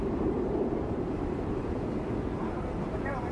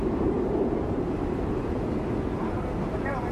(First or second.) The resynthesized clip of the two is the first